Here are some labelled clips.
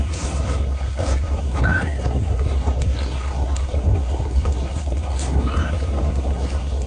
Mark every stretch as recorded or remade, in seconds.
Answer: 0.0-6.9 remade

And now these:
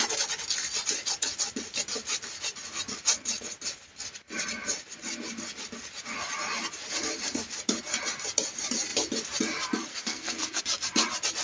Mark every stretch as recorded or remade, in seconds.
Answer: 0.0-9.9 recorded; 9.9-10.6 remade; 10.6-11.4 recorded

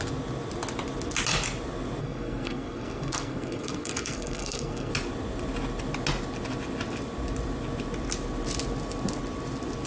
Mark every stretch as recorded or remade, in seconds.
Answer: 0.0-2.0 recorded; 2.0-4.9 remade; 4.9-9.9 recorded

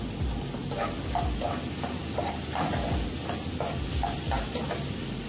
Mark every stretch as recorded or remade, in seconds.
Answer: 0.0-5.3 recorded

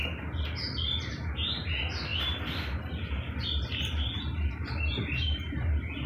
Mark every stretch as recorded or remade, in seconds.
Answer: 0.0-6.1 recorded

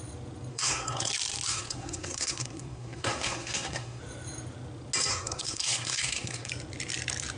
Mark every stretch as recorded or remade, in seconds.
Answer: 0.0-0.5 recorded; 0.5-1.1 remade; 1.1-1.5 recorded; 1.5-4.0 remade; 4.0-5.1 recorded; 5.1-6.5 remade; 6.5-7.4 recorded